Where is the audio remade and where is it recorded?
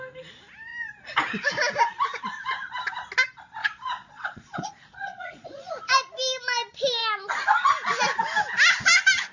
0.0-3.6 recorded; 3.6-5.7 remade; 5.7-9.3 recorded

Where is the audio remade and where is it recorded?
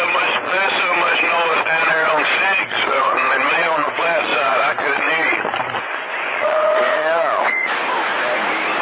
0.0-7.8 remade; 7.8-8.8 recorded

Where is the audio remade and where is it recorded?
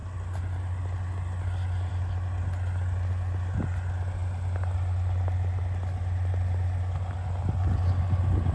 0.0-8.5 recorded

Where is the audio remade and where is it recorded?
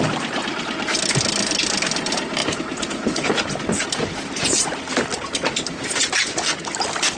0.0-7.2 recorded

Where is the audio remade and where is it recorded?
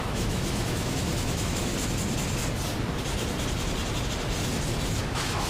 0.0-1.7 remade; 1.7-5.0 recorded; 5.0-5.5 remade